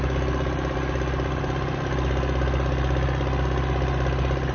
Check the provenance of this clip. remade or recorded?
recorded